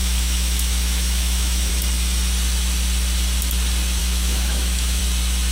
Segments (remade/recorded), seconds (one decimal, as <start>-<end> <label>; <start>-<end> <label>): 0.0-1.7 remade; 1.7-4.0 recorded; 4.0-5.0 remade; 5.0-5.5 recorded